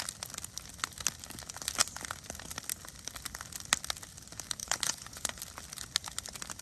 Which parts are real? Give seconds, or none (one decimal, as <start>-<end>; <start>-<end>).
0.0-4.6; 5.4-6.6